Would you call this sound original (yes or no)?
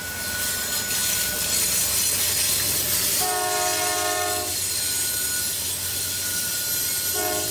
yes